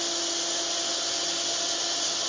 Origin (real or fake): real